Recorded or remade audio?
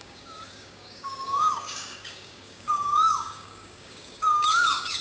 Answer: remade